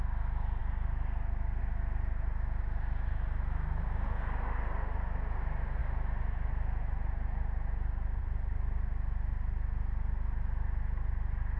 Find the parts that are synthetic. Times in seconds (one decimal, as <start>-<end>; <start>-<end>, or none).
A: none